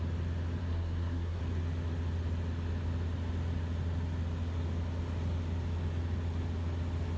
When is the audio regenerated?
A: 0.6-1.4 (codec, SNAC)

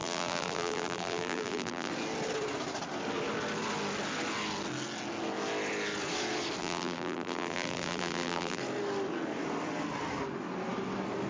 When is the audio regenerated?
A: 0.0-1.9 (vocoder, BigVGAN v2); 6.6-8.6

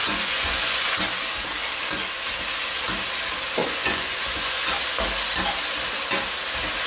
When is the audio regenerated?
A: 0.0-1.0 (vocoder, Vocos); 3.6-4.7

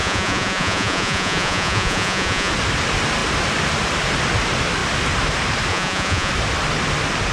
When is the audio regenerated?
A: 0.0-2.5 (vocoder, Vocos); 5.7-6.3

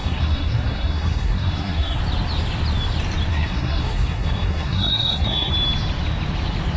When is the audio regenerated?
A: 0.0-2.0 (codec, SNAC); 3.3-5.5

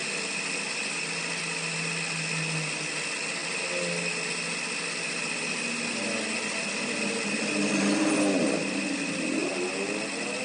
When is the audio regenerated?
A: none